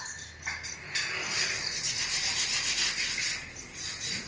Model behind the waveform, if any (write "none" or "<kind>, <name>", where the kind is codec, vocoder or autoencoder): none